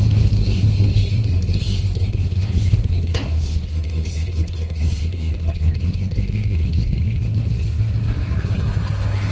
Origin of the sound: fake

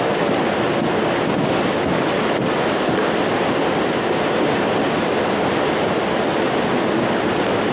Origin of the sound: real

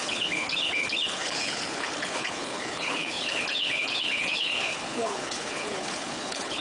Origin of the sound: fake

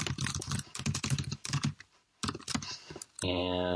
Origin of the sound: real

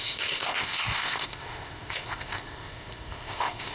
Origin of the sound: fake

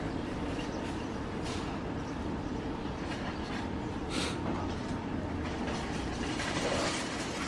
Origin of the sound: real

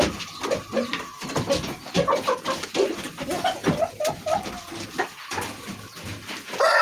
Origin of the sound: real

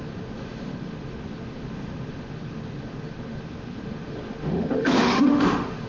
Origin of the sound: fake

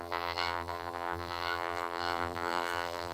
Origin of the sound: fake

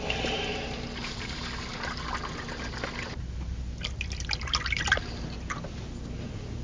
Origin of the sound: real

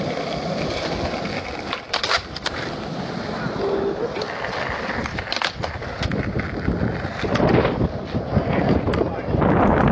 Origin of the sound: real